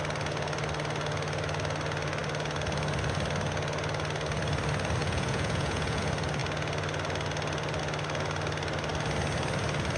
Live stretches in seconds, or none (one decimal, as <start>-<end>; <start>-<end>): 0.0-5.0; 6.0-10.0